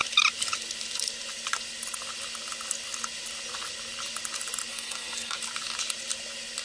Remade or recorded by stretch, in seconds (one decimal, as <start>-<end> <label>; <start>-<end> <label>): 0.0-4.7 recorded; 4.7-5.4 remade; 5.4-6.6 recorded